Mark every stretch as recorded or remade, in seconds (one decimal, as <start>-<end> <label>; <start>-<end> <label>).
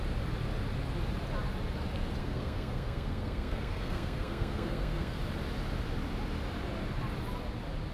0.0-2.2 recorded; 2.2-5.2 remade; 5.2-7.9 recorded